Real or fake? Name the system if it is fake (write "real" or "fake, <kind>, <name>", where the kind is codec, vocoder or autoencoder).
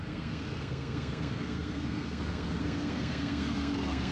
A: fake, codec, SNAC